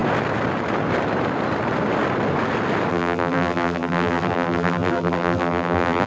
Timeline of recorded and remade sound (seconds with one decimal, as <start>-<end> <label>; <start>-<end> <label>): 0.0-2.9 recorded; 2.9-6.1 remade